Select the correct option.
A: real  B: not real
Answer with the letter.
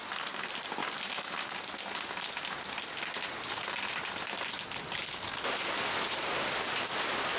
A